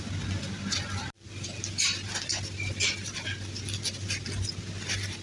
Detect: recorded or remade recorded